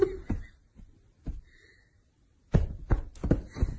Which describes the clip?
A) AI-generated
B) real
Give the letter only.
B